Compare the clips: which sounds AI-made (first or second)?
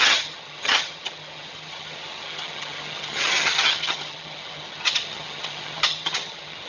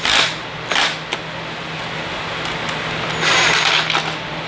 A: first